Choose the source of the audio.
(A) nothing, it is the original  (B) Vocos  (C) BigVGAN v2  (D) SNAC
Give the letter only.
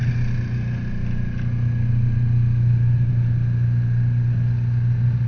A